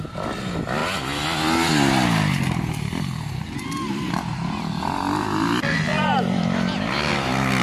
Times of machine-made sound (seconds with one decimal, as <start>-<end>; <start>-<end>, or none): none